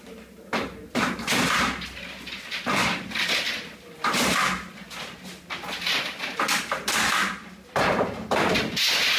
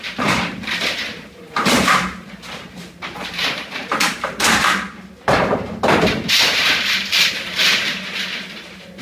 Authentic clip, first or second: first